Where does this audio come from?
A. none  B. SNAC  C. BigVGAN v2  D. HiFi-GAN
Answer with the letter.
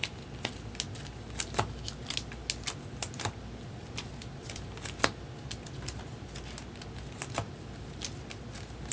A